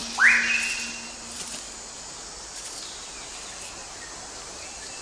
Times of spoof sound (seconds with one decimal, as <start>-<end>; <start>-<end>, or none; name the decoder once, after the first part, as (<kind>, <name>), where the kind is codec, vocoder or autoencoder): none